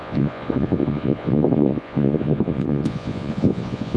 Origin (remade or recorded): remade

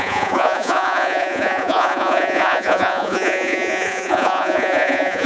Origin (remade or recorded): remade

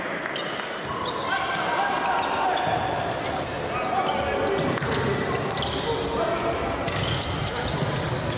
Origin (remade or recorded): recorded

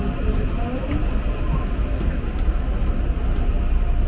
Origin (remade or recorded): recorded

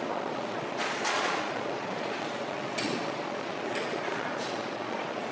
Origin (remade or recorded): remade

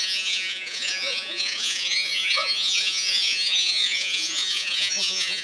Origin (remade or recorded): remade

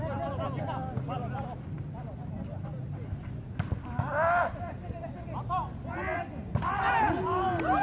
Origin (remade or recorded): recorded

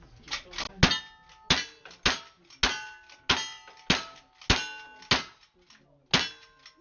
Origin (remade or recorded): recorded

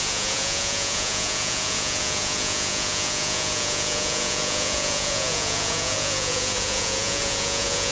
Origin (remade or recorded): remade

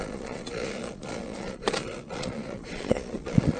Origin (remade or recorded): remade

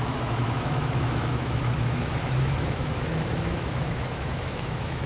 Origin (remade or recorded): remade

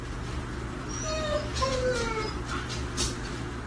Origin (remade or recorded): recorded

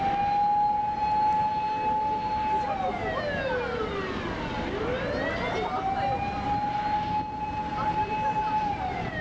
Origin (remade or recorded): recorded